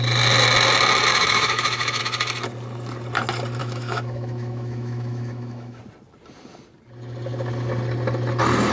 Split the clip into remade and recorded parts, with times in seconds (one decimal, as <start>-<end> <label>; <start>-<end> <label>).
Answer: 0.0-1.1 recorded; 1.1-2.0 remade; 2.0-3.6 recorded; 3.6-5.8 remade; 5.8-8.7 recorded

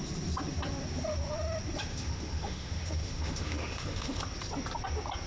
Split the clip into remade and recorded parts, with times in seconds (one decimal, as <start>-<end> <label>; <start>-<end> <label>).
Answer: 0.0-1.9 recorded; 1.9-4.2 remade; 4.2-5.3 recorded

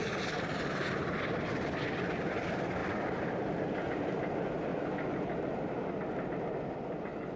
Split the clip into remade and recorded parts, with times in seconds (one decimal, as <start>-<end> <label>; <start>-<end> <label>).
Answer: 0.0-7.4 recorded

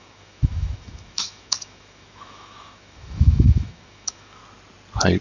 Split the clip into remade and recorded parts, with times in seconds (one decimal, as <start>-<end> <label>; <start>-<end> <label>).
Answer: 0.0-4.4 remade; 4.4-5.2 recorded

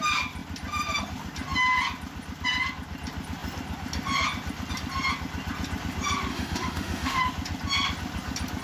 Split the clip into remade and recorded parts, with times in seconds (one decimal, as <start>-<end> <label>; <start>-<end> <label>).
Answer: 0.0-6.3 recorded; 6.3-7.2 remade; 7.2-8.6 recorded